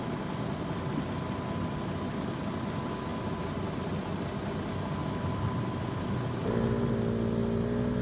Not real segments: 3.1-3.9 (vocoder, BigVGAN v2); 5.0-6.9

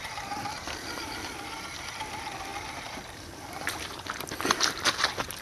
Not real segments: none

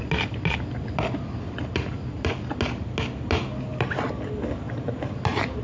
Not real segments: none

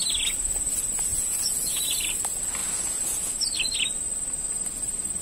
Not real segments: 1.1-1.8 (vocoder, Vocos); 2.6-3.3

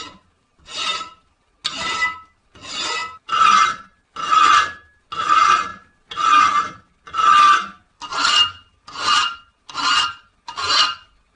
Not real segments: none

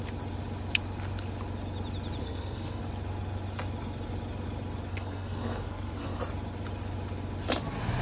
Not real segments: 2.2-2.8 (codec, SNAC); 4.9-6.2